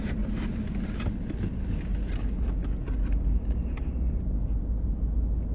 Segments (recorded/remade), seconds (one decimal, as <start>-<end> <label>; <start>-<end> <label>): 0.0-5.5 recorded